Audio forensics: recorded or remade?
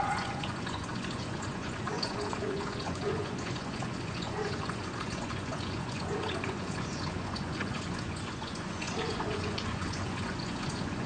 remade